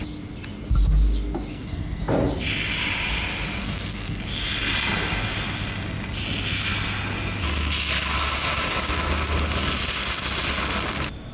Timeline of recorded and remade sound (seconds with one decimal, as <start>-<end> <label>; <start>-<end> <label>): 0.0-1.5 recorded; 1.5-2.0 remade; 2.0-3.6 recorded; 3.6-4.2 remade; 4.2-11.3 recorded